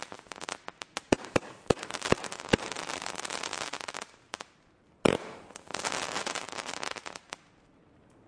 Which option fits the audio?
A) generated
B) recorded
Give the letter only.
A